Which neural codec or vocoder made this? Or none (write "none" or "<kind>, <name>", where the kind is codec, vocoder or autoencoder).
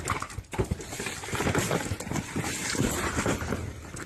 none